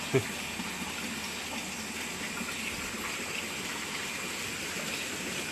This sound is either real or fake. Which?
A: real